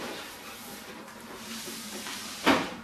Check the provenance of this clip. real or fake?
fake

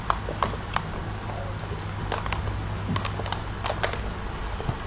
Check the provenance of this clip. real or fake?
real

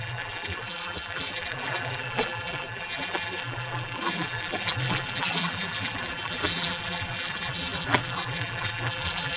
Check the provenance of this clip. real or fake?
fake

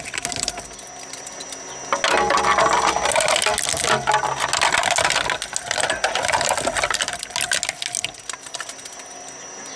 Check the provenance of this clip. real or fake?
real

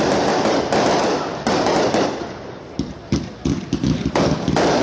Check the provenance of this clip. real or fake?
real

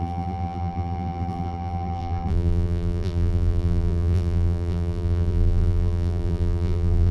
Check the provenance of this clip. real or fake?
fake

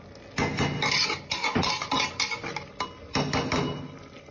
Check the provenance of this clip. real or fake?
real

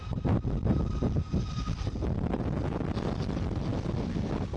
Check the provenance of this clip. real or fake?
real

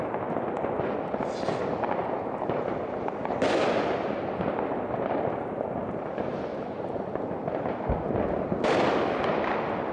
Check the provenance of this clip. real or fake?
real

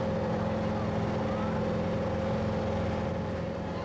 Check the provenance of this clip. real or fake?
real